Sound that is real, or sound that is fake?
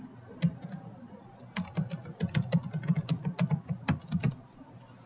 real